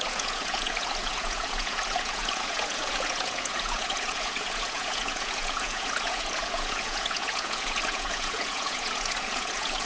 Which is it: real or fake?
fake